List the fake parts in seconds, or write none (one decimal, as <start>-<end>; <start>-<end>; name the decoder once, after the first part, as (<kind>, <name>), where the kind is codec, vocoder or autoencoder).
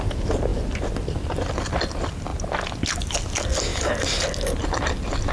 none